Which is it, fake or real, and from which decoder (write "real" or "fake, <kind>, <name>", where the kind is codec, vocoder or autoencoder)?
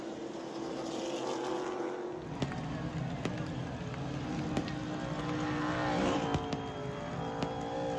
real